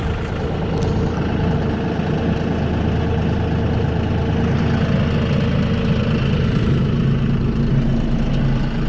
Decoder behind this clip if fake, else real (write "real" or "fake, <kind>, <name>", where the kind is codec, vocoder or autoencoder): real